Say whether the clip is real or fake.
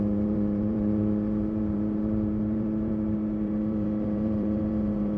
fake